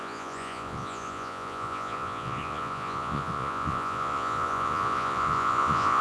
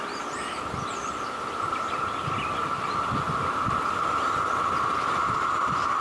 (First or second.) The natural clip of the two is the second